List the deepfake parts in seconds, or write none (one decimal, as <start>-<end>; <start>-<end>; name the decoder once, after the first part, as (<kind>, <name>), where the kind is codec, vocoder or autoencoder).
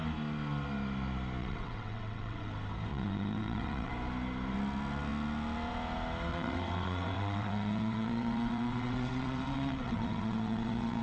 1.4-2.5 (vocoder, WaveNeXt); 2.9-3.9; 6.3-11.0